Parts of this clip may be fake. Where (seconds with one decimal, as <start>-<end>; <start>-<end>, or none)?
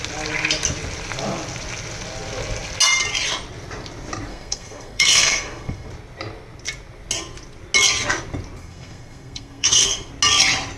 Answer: 4.3-5.9; 8.6-10.1